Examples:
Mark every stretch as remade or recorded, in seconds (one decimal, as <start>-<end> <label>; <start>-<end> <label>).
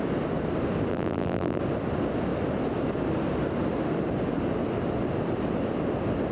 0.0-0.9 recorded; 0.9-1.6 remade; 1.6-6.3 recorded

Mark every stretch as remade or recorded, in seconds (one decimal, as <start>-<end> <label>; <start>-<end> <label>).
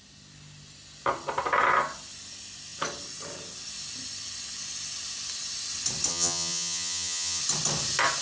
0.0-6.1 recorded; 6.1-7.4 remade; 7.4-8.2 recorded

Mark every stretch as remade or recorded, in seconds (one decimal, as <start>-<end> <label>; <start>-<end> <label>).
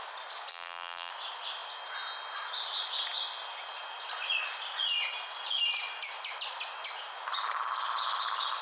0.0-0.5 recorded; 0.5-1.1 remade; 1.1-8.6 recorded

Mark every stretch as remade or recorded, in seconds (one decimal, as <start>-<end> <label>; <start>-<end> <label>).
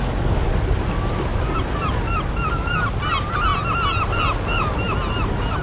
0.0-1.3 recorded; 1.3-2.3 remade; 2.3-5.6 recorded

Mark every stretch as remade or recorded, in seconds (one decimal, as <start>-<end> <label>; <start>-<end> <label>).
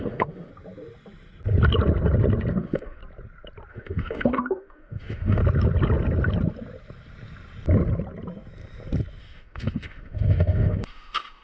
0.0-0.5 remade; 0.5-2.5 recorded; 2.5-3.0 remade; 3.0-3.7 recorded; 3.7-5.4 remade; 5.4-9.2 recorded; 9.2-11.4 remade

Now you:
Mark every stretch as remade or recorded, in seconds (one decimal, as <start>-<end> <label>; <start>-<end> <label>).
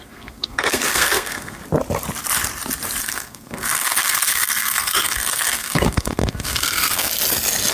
0.0-1.6 remade; 1.6-3.0 recorded; 3.0-7.1 remade; 7.1-7.7 recorded